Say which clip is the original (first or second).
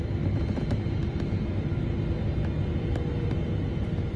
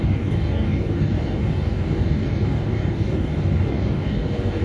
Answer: first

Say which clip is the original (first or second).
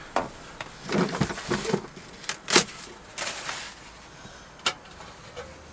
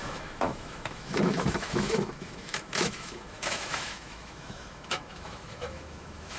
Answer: first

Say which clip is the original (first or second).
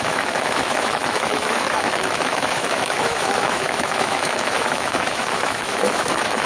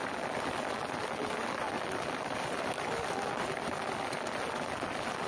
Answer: second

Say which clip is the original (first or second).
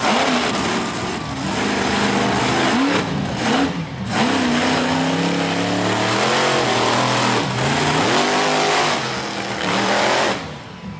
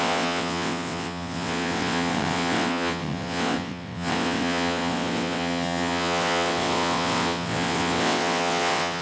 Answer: first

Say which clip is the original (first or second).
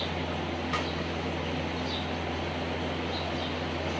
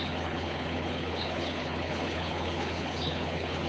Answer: first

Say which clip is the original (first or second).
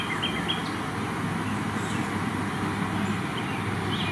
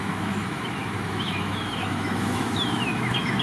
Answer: first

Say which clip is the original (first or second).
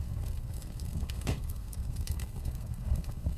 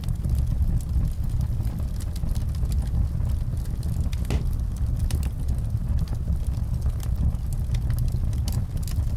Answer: second